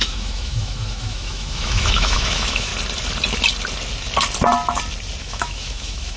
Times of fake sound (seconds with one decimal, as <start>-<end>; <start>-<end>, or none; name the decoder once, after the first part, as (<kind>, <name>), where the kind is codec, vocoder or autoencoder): 0.0-2.7 (autoencoder, DAC-VAE); 5.2-6.2

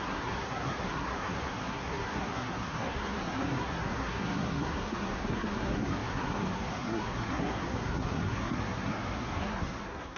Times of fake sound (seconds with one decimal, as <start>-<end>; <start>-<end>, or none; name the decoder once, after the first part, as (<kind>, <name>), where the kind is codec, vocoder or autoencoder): 0.0-10.2 (codec, SNAC)

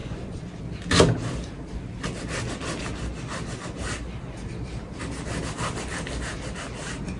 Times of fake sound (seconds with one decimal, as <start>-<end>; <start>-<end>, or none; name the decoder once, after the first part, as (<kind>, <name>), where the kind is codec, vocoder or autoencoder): 0.0-0.6 (vocoder, Vocos)

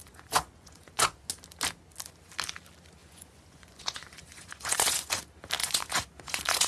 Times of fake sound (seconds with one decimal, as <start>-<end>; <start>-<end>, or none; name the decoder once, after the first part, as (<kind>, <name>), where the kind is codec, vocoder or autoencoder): 0.0-1.3 (vocoder, Vocos); 3.0-5.1; 5.6-6.7

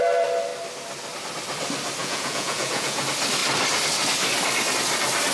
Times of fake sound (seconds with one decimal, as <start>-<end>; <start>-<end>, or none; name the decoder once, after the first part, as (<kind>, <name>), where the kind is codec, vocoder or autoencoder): 2.0-3.0 (vocoder, Vocos)